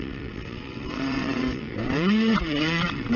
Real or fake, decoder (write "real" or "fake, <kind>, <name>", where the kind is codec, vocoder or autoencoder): fake, vocoder, WaveNeXt